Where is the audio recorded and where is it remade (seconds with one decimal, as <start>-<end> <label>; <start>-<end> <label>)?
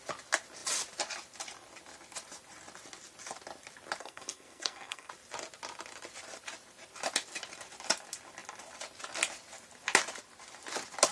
0.0-4.0 recorded; 4.0-5.1 remade; 5.1-11.1 recorded